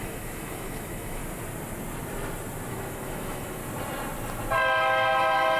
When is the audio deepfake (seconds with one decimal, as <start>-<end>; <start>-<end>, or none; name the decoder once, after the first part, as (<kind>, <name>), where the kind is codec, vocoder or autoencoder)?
0.0-1.2 (autoencoder, DAC-VAE); 2.7-3.6